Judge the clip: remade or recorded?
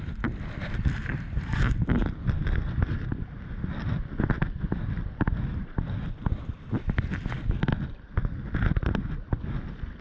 recorded